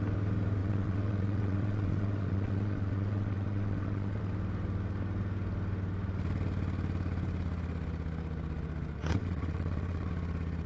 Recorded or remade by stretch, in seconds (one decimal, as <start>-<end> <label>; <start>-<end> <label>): 0.0-0.6 recorded; 0.6-4.2 remade; 4.2-9.0 recorded; 9.0-10.1 remade; 10.1-10.7 recorded